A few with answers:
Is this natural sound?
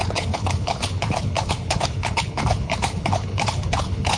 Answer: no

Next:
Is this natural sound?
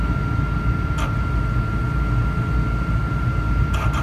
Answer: yes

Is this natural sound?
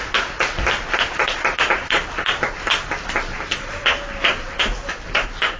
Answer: yes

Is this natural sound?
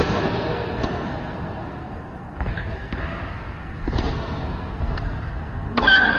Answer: no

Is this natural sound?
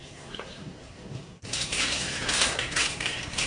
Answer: no